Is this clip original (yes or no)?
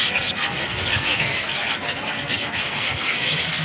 no